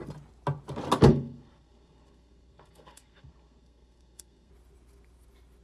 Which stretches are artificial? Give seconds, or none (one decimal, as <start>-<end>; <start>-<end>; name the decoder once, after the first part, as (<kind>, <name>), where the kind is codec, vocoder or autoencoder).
1.1-4.5 (codec, SNAC)